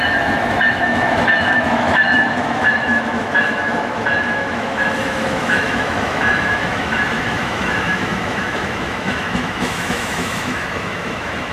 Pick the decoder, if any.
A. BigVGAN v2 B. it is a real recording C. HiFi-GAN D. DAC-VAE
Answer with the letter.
D